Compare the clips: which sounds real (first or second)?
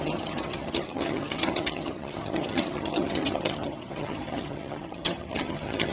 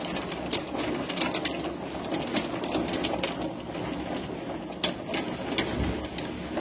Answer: second